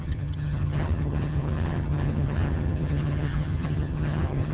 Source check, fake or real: fake